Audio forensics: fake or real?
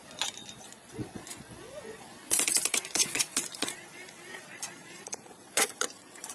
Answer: fake